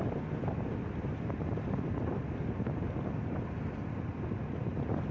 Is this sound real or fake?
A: real